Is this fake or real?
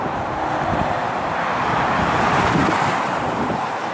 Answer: fake